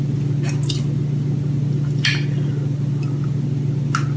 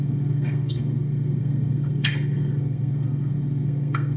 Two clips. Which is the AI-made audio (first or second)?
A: second